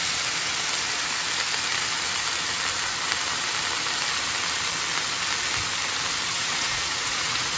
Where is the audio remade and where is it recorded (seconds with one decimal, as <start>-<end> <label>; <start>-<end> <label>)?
0.0-6.3 recorded; 6.3-7.6 remade